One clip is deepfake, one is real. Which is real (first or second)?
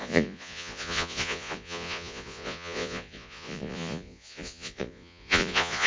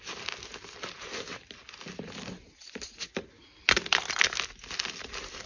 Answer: second